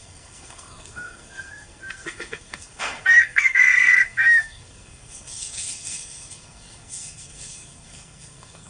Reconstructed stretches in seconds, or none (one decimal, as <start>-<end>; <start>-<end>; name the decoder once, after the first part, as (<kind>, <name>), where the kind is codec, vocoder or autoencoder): 0.0-8.7 (codec, SNAC)